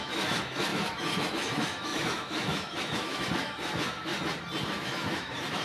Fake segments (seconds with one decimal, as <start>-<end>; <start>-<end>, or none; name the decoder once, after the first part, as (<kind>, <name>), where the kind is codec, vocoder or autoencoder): 0.0-4.1 (autoencoder, DAC-VAE); 4.6-5.6